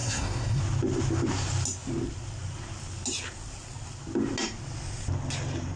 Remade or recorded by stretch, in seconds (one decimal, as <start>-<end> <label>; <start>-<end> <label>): 0.0-0.6 remade; 0.6-5.8 recorded